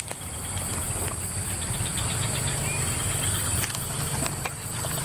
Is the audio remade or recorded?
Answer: recorded